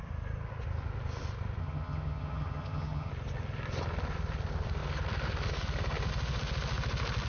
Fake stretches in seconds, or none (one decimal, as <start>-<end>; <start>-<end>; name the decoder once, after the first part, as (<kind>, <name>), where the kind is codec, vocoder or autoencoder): 1.6-3.1 (vocoder, HiFi-GAN)